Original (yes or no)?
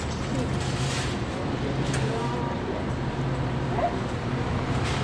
yes